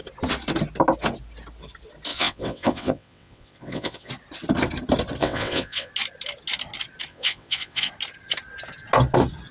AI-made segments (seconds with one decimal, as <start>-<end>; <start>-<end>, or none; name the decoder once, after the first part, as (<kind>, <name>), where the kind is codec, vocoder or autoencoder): 2.1-4.1 (vocoder, WaveNeXt); 5.2-5.9; 7.1-7.9